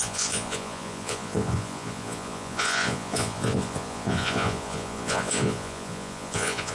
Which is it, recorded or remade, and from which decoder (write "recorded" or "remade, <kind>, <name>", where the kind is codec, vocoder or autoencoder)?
remade, vocoder, Vocos